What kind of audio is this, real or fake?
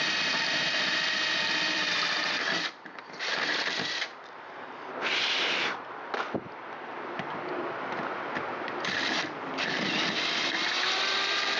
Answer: fake